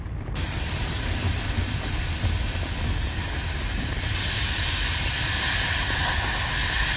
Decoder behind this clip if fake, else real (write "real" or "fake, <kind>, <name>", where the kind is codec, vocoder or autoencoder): real